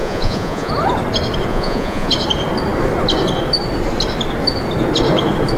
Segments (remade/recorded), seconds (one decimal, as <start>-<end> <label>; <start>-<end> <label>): 0.0-0.7 remade; 0.7-1.5 recorded; 1.5-2.1 remade; 2.1-5.6 recorded